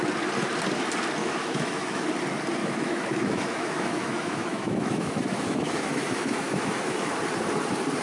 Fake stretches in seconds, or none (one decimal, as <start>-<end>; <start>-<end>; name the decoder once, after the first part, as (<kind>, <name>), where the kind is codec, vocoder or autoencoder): 1.2-2.1 (autoencoder, DAC-VAE); 2.6-7.1